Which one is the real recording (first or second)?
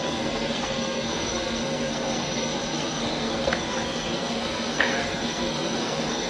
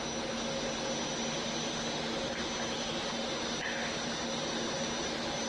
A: second